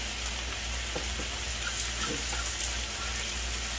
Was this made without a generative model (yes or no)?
yes